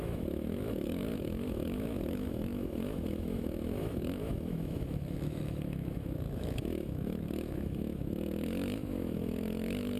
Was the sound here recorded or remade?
remade